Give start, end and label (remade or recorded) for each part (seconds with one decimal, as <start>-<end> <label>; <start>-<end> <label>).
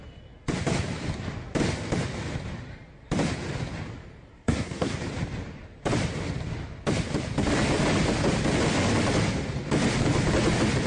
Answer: 0.0-4.3 recorded; 4.3-5.0 remade; 5.0-10.9 recorded